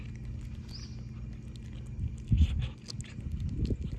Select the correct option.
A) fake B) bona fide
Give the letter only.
B